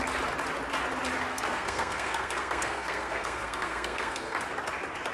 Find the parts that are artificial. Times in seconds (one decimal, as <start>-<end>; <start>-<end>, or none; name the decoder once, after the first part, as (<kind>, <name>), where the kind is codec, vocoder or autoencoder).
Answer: 1.3-4.4 (codec, SNAC)